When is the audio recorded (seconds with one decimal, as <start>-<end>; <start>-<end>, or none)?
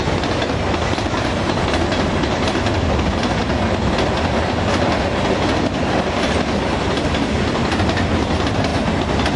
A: 0.0-9.4